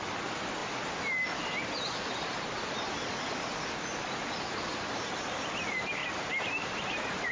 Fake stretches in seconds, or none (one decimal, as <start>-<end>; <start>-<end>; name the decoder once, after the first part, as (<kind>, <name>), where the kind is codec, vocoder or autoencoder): 6.0-7.3 (vocoder, BigVGAN v2)